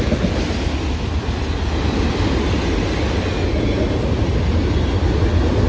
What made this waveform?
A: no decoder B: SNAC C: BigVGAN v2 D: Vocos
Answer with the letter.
A